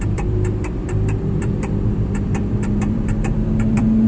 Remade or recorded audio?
remade